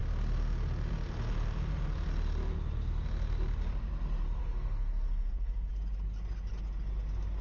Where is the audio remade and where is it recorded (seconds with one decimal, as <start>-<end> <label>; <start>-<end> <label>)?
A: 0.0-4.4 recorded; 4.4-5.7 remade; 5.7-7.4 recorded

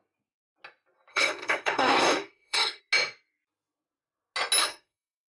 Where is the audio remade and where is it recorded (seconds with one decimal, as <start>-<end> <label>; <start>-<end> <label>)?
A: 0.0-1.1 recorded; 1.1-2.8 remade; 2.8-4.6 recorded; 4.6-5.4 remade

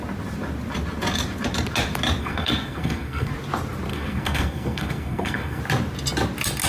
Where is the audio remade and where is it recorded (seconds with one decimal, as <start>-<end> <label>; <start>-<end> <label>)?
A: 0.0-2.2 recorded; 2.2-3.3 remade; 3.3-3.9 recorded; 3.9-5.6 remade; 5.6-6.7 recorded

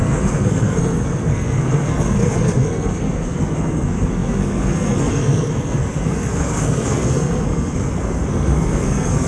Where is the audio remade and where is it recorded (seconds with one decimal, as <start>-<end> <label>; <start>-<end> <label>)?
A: 0.0-9.3 remade

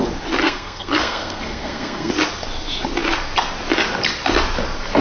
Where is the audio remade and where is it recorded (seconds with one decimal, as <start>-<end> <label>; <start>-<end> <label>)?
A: 0.0-0.4 recorded; 0.4-2.1 remade; 2.1-5.0 recorded

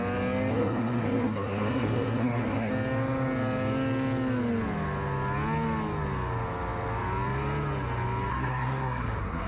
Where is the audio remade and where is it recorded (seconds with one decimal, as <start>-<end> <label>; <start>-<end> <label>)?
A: 0.0-0.5 recorded; 0.5-2.7 remade; 2.7-8.3 recorded; 8.3-9.5 remade

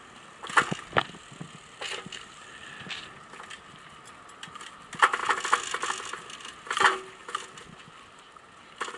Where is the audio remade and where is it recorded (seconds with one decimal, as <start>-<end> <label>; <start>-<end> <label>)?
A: 0.0-9.0 recorded